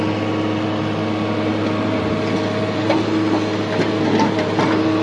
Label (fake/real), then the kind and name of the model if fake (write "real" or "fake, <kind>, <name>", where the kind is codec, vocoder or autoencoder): real